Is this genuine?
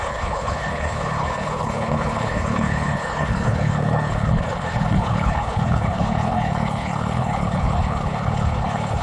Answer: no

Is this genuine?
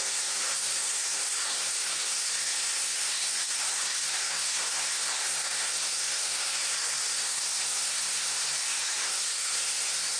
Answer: no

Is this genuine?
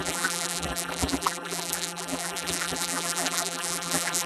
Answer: no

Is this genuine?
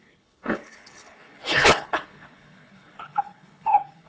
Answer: no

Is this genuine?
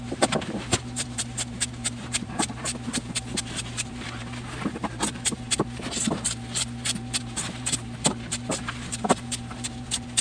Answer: no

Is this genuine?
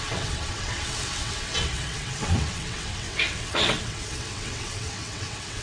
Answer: no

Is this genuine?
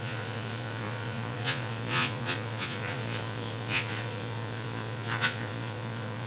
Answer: no